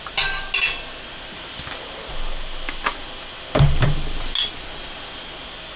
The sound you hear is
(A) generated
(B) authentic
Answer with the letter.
B